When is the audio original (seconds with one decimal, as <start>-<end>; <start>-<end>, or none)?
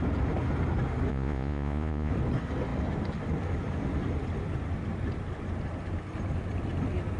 0.0-1.1; 2.1-7.2